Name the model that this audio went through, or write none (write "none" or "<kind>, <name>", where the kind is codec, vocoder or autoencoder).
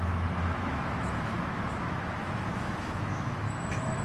autoencoder, DAC-VAE